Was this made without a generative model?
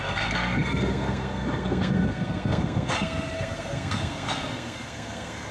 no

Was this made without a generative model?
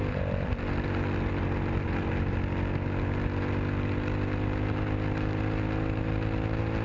yes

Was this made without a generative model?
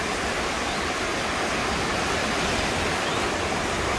yes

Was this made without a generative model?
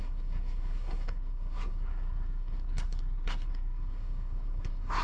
no